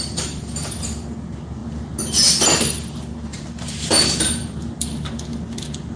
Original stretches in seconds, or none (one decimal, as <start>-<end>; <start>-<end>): 0.0-6.0